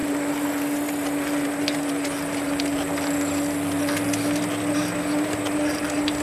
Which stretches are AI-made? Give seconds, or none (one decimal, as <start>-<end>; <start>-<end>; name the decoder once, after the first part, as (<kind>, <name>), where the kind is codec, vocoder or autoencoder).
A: none